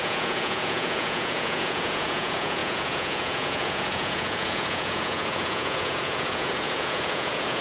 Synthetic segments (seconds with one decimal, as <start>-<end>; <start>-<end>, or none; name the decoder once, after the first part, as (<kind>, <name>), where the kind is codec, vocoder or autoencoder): 0.0-7.6 (vocoder, Vocos)